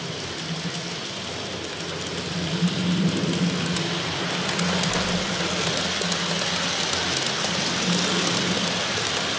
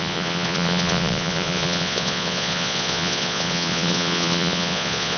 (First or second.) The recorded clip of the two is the first